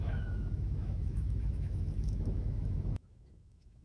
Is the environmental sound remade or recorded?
remade